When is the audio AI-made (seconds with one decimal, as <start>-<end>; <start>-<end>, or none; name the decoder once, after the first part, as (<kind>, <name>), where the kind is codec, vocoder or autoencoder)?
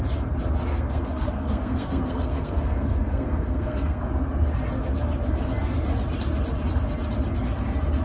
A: 0.7-4.0 (codec, SNAC)